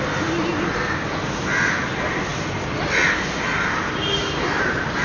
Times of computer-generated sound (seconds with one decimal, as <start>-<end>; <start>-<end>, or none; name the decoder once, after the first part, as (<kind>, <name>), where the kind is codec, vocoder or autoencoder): none